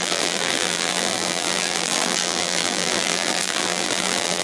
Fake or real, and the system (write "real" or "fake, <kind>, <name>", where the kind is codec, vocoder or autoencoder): fake, vocoder, BigVGAN v2